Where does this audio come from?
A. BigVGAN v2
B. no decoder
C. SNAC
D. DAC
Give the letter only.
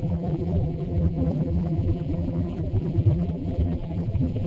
A